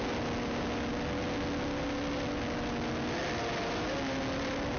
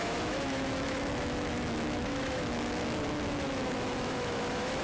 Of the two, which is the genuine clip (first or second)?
first